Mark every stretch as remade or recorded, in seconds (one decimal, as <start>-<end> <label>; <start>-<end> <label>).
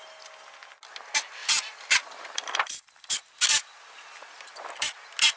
0.0-1.4 recorded; 1.4-4.6 remade; 4.6-5.4 recorded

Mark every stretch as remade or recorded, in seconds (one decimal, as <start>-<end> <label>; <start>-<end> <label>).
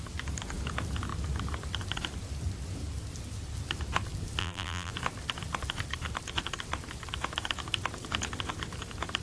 0.0-4.4 recorded; 4.4-4.9 remade; 4.9-9.2 recorded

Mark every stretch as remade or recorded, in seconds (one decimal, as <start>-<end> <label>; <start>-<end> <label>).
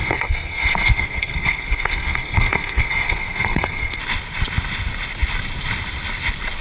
0.0-4.0 remade; 4.0-6.6 recorded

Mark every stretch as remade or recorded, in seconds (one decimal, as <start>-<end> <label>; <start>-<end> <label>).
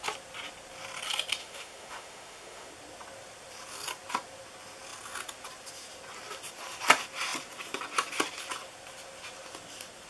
0.0-1.4 recorded; 1.4-2.7 remade; 2.7-10.1 recorded